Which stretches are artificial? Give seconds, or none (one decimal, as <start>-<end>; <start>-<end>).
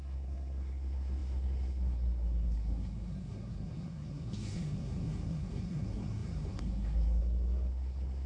0.0-8.3